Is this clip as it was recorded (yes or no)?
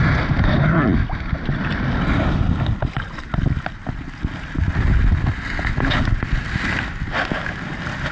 yes